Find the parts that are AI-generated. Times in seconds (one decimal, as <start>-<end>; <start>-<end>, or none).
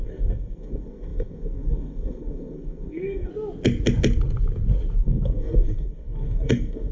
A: 0.0-3.3; 5.0-6.9